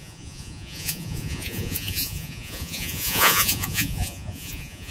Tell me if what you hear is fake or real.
fake